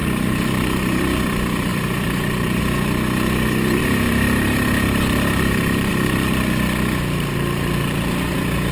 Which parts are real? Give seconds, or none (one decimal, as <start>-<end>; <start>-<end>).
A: 1.0-1.7; 2.6-3.8; 5.9-8.7